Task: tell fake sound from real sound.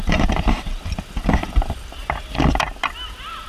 fake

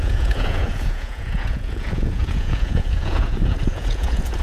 fake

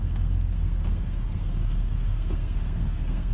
fake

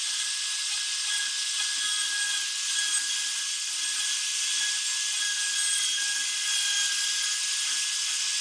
real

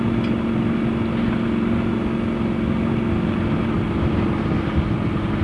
real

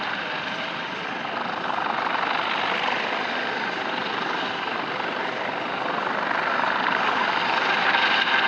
real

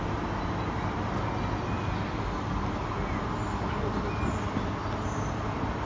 real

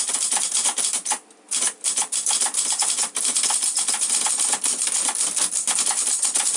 fake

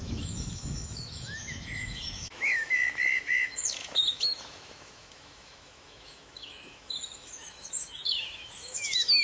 fake